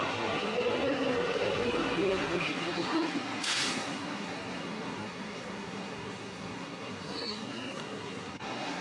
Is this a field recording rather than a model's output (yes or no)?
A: no